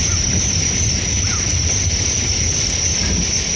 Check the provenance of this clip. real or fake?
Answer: real